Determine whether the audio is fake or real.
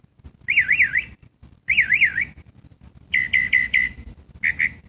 real